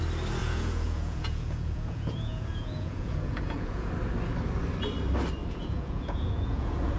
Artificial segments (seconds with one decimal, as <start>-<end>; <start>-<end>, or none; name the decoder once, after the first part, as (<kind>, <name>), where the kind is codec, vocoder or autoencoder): 0.4-3.9 (vocoder, Vocos); 5.4-7.0